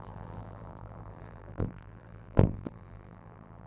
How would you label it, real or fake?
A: fake